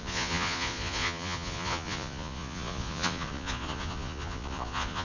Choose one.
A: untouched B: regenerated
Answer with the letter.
B